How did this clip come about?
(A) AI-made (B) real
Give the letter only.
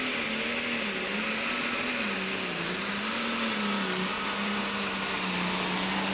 B